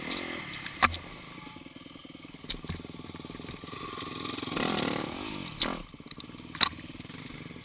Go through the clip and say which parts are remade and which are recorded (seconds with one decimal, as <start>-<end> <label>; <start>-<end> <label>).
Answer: 0.0-7.6 recorded